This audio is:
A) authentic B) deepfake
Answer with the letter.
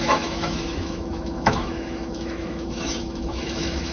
B